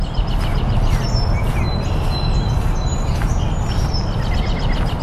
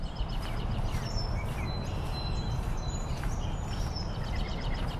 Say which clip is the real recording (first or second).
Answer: first